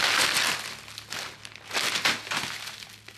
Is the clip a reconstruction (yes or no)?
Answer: no